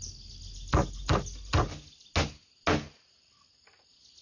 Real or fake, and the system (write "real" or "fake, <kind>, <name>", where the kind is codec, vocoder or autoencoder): real